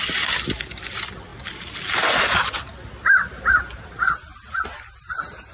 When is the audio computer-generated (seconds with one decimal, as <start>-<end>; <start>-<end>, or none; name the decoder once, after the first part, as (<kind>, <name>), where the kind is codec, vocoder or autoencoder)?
none

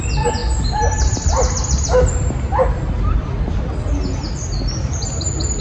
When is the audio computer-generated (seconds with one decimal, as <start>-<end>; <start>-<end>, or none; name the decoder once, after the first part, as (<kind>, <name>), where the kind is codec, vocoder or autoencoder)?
0.4-3.8 (vocoder, BigVGAN v2)

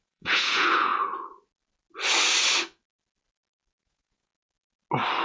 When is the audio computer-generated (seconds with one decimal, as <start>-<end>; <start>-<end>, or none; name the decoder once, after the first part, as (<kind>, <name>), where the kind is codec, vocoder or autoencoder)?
0.0-0.9 (vocoder, Vocos); 3.8-4.3

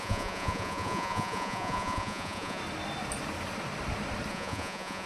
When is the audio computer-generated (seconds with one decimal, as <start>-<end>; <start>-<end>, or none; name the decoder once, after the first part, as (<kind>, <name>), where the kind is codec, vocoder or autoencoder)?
0.0-2.6 (vocoder, Vocos); 4.3-5.1

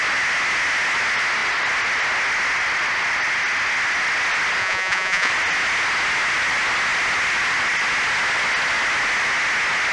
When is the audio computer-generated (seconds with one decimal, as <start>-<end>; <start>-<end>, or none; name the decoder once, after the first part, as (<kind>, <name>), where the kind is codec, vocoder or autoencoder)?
4.6-5.3 (vocoder, Vocos)

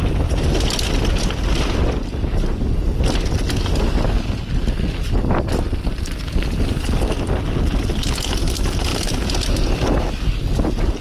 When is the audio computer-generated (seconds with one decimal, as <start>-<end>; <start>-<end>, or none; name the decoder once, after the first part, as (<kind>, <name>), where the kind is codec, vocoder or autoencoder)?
none